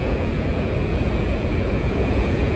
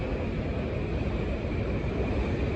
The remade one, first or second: first